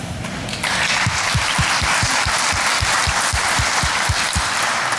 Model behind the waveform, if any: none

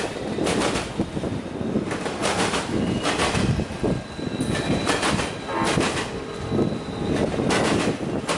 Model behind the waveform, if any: none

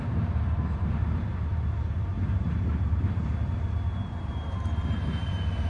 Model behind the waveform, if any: vocoder, BigVGAN v2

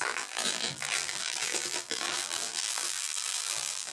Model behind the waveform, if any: vocoder, BigVGAN v2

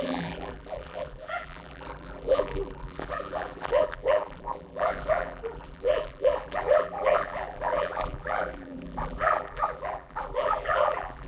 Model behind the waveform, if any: vocoder, BigVGAN v2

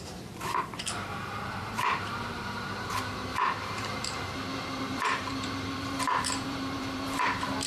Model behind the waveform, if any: vocoder, BigVGAN v2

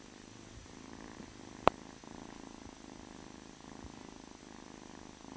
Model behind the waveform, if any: none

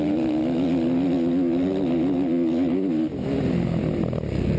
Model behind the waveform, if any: none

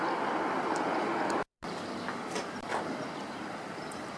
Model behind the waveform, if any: vocoder, BigVGAN v2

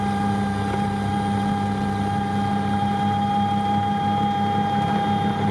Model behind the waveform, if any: none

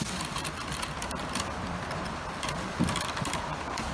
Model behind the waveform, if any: vocoder, BigVGAN v2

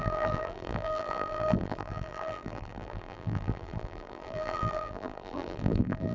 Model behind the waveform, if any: vocoder, BigVGAN v2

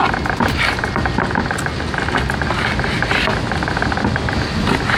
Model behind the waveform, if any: none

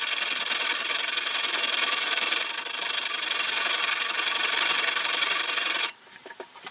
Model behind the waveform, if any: vocoder, BigVGAN v2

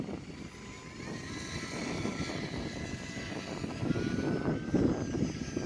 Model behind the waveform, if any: none